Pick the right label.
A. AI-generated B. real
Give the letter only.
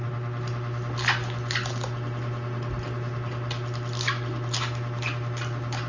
B